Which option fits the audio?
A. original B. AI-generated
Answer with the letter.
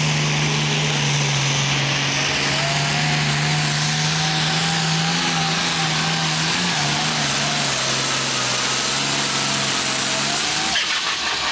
A